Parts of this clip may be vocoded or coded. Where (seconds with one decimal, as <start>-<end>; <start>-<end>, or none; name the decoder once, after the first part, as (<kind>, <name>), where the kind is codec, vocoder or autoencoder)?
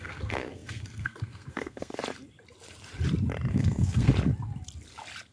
0.0-2.0 (codec, SNAC); 3.5-4.1